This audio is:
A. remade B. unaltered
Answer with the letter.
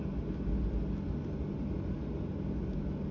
B